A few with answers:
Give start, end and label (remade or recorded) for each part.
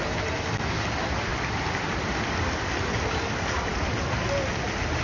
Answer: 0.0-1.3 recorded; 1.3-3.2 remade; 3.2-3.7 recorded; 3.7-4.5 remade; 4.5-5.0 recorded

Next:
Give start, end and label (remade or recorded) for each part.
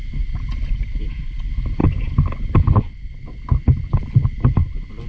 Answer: 0.0-0.7 recorded; 0.7-1.8 remade; 1.8-4.0 recorded; 4.0-5.1 remade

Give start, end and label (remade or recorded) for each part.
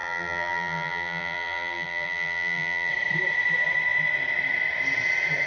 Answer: 0.0-2.9 remade; 2.9-5.5 recorded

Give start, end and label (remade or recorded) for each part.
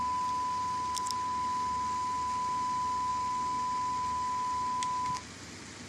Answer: 0.0-5.9 recorded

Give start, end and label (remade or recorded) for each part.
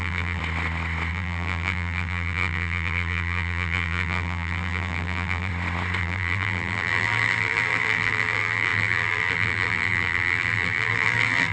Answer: 0.0-0.4 remade; 0.4-1.1 recorded; 1.1-5.5 remade; 5.5-6.0 recorded; 6.0-11.5 remade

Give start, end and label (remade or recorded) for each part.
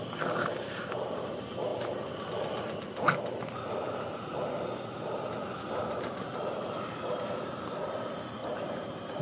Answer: 0.0-8.4 recorded; 8.4-9.2 remade